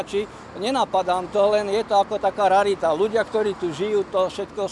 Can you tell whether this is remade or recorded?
recorded